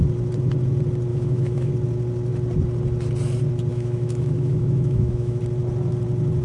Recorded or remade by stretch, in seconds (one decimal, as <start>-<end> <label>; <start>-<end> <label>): 0.0-1.1 recorded; 1.1-1.7 remade; 1.7-3.7 recorded; 3.7-5.4 remade; 5.4-6.4 recorded